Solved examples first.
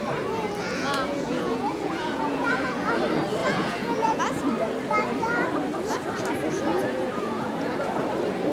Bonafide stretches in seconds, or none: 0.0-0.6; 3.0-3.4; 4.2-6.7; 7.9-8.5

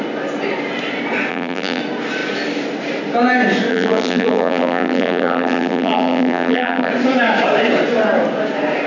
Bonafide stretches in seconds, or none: 0.0-1.3; 1.8-3.7; 6.9-8.9

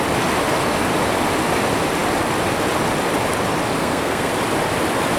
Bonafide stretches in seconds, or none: 0.0-3.8; 4.3-5.2

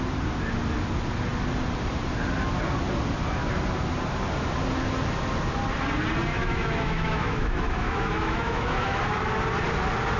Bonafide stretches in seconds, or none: 0.0-6.3; 9.0-10.2